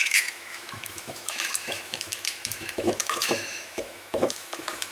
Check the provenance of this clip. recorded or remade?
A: remade